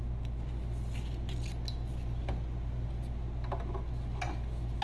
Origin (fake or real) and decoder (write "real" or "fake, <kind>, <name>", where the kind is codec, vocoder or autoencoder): real